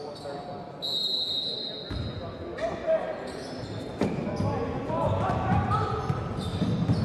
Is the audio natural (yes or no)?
yes